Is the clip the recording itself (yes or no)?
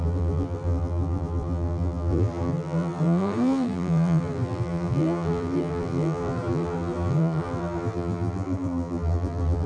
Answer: no